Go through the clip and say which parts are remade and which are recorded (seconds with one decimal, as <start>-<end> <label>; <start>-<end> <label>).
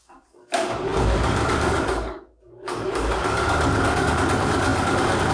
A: 0.0-5.3 remade